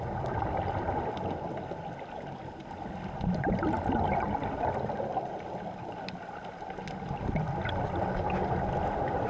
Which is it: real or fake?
real